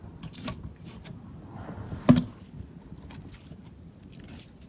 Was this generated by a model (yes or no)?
no